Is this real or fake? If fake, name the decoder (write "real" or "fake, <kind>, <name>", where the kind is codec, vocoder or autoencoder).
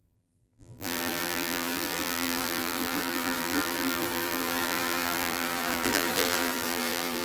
fake, vocoder, BigVGAN v2